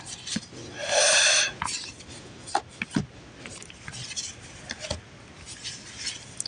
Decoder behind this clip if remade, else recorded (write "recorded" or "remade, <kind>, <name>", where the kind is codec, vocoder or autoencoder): recorded